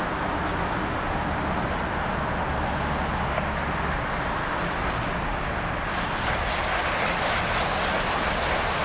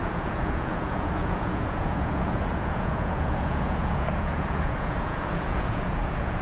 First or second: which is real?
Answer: first